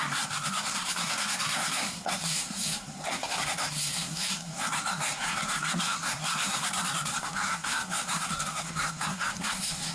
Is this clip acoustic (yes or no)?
no